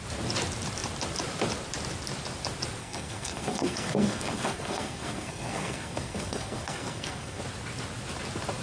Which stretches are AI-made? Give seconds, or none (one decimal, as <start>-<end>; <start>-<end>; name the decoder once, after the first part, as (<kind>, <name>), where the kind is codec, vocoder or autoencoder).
2.8-7.4 (codec, SNAC)